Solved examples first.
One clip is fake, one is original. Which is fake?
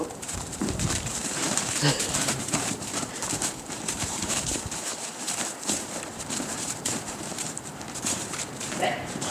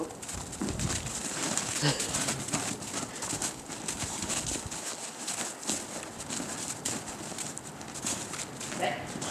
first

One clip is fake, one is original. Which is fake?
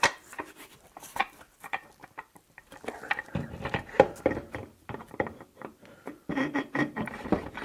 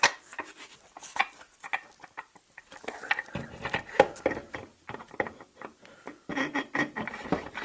first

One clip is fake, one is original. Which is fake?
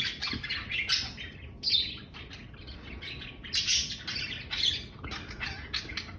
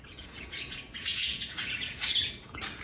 second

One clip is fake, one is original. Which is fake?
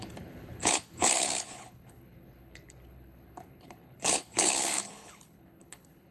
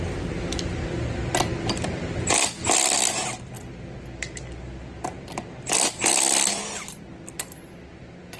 first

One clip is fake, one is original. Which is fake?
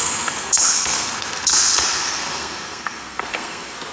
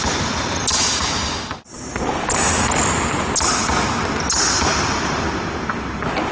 first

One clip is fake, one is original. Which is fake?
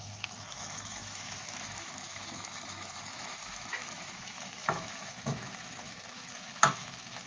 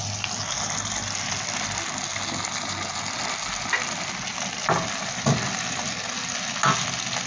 first